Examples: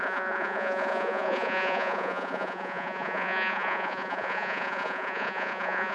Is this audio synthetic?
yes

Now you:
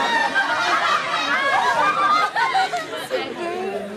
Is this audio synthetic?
no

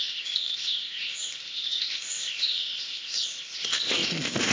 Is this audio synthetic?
yes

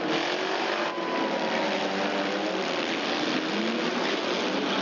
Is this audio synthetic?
no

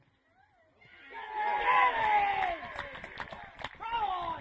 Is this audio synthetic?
no